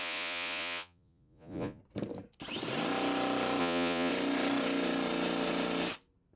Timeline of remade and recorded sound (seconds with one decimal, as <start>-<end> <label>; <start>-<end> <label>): 0.0-1.8 remade; 1.8-3.6 recorded; 3.6-4.1 remade; 4.1-6.4 recorded